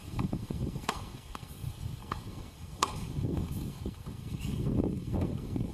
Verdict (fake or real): fake